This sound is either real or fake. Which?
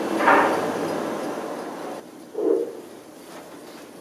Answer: real